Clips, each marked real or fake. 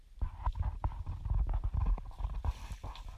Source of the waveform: real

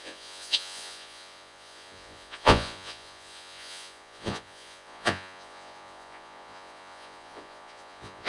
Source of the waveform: fake